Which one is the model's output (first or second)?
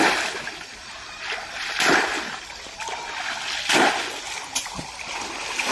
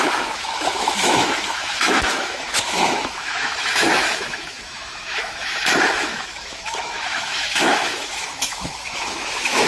second